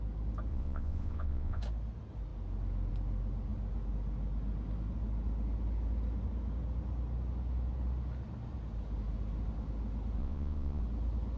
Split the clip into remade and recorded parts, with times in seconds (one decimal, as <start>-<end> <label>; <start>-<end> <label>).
0.0-0.5 recorded; 0.5-1.6 remade; 1.6-10.2 recorded; 10.2-10.8 remade; 10.8-11.4 recorded